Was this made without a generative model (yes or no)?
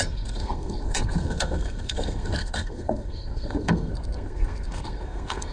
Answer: no